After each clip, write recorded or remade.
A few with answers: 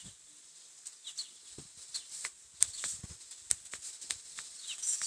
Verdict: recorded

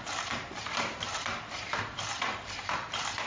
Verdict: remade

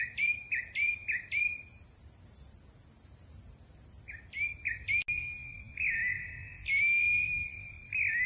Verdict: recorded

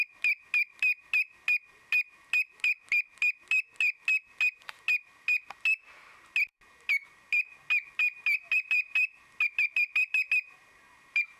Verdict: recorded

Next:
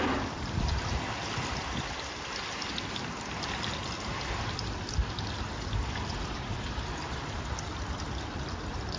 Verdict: recorded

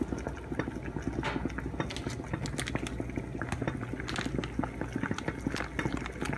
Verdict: recorded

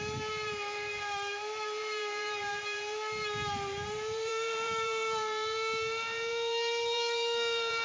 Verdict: remade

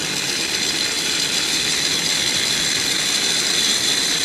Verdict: remade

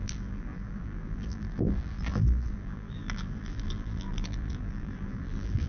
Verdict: remade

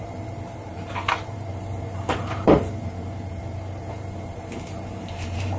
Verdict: remade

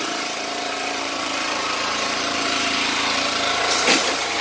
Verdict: remade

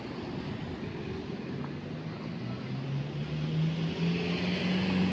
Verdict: recorded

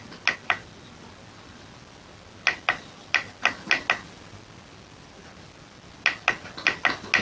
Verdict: recorded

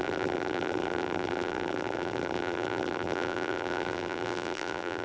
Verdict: remade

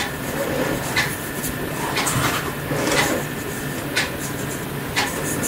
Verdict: recorded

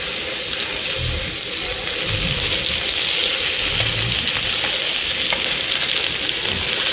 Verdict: recorded